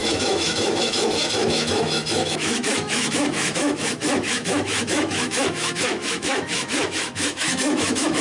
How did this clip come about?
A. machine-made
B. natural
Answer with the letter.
A